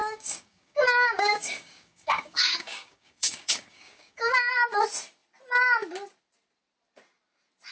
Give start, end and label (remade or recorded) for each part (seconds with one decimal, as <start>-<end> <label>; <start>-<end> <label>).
0.0-4.5 remade; 4.5-7.7 recorded